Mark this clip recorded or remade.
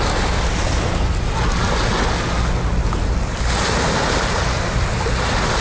recorded